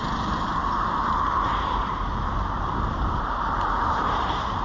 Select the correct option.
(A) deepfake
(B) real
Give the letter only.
A